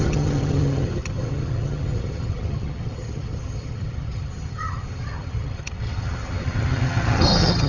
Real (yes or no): no